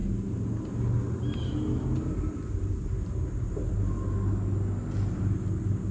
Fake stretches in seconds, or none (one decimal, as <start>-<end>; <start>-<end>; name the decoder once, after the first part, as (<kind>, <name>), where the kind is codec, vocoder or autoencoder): none